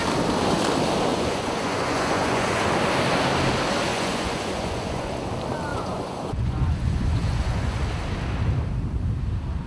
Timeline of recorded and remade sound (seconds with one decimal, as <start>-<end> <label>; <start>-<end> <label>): 0.0-1.1 recorded; 1.1-2.6 remade; 2.6-3.9 recorded; 3.9-5.3 remade; 5.3-5.7 recorded; 5.7-7.8 remade; 7.8-9.7 recorded

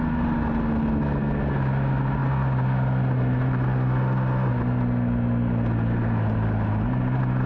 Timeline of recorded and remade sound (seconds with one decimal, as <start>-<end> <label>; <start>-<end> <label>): 0.0-7.5 recorded

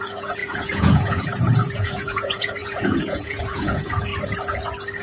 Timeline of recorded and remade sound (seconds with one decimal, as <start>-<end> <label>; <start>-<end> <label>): 0.0-4.1 remade; 4.1-5.0 recorded

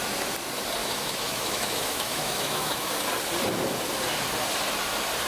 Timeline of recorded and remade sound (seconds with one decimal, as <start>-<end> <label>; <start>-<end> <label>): 0.0-0.8 recorded; 0.8-2.9 remade; 2.9-5.3 recorded

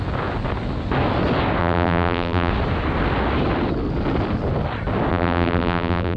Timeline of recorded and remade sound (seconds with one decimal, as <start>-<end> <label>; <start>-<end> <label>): 0.0-1.6 recorded; 1.6-2.5 remade; 2.5-5.1 recorded; 5.1-6.2 remade